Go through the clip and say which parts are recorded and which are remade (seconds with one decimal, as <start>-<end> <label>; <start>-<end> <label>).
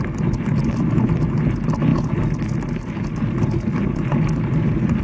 0.0-5.0 recorded